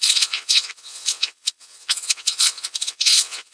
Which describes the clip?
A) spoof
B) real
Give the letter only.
A